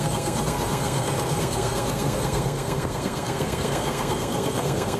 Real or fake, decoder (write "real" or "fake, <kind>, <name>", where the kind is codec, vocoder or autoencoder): fake, codec, SNAC